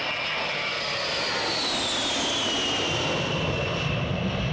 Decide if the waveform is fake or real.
real